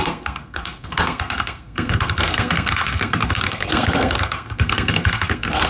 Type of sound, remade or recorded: remade